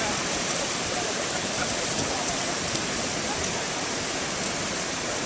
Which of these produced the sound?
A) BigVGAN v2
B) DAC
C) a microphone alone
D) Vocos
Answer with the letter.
A